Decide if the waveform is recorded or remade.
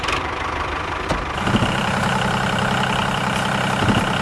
remade